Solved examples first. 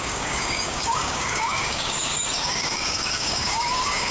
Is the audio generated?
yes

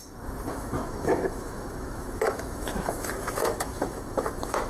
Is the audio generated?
yes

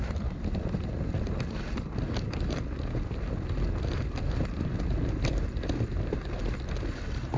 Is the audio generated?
no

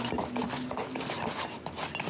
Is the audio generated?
no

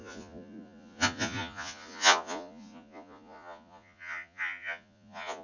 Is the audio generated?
yes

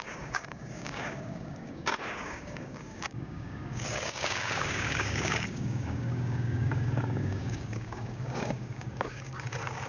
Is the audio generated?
yes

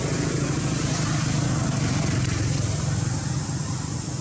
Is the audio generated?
no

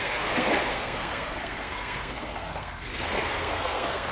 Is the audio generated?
yes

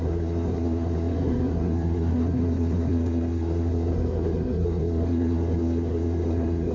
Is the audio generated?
yes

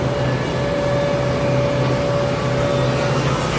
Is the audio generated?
no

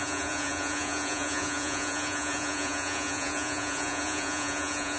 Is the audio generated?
yes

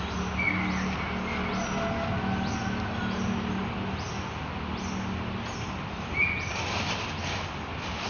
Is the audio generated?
no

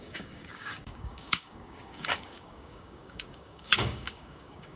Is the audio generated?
yes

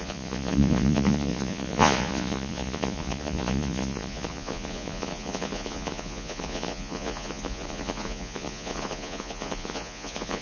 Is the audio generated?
yes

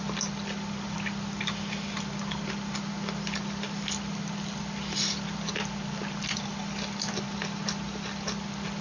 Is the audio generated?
no